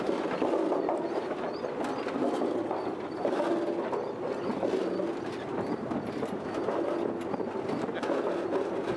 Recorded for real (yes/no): yes